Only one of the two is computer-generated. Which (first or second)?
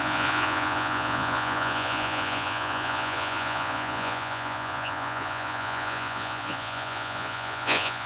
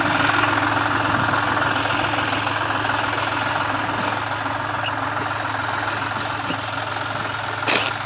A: first